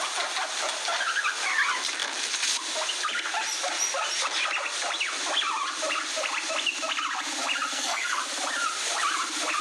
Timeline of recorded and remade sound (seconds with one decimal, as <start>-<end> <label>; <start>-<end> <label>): 0.0-7.7 recorded; 7.7-8.2 remade; 8.2-9.6 recorded